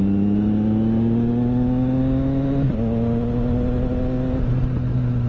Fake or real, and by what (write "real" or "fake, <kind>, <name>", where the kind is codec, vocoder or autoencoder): real